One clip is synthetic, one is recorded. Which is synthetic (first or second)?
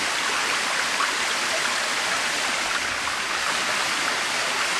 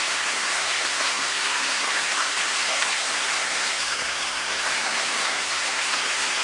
second